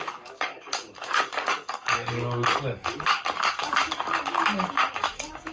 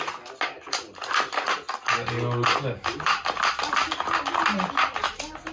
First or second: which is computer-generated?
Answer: first